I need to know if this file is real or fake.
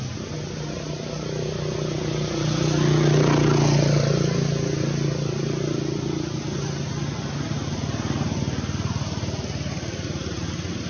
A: real